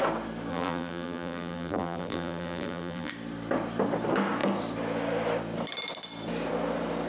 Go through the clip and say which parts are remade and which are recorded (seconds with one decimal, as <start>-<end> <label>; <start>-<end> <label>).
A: 0.0-0.5 recorded; 0.5-3.1 remade; 3.1-7.1 recorded